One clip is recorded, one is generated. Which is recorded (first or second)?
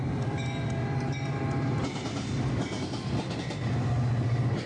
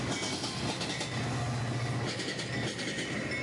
second